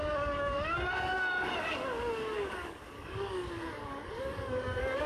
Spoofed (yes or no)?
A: yes